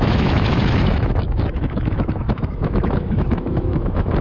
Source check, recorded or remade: remade